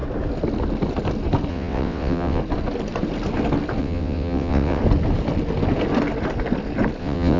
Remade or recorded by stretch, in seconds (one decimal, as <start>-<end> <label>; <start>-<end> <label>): 0.0-1.5 recorded; 1.5-2.4 remade; 2.4-3.8 recorded; 3.8-4.8 remade; 4.8-7.0 recorded; 7.0-7.4 remade